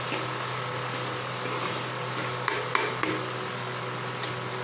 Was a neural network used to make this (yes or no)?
no